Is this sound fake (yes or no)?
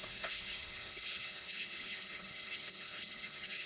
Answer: yes